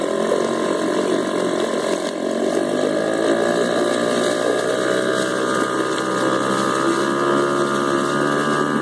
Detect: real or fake real